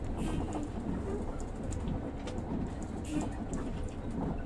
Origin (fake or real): real